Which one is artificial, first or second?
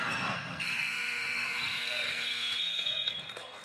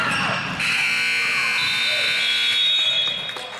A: first